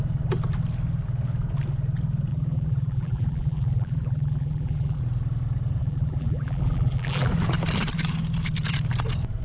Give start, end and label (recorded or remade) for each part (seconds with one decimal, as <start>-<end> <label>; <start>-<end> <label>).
0.0-2.3 recorded; 2.3-5.0 remade; 5.0-5.8 recorded; 5.8-7.3 remade; 7.3-9.4 recorded